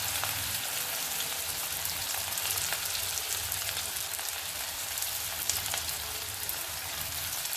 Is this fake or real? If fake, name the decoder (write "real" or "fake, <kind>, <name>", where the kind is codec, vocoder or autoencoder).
fake, vocoder, BigVGAN v2